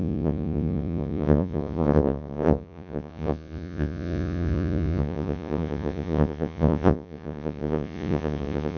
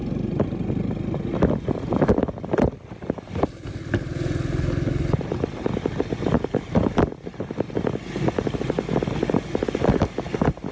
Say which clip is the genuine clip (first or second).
second